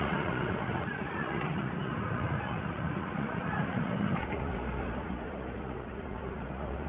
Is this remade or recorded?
remade